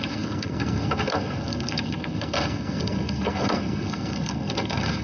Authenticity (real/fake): fake